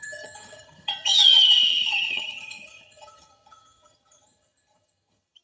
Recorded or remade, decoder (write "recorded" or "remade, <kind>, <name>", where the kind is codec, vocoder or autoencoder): remade, vocoder, HiFi-GAN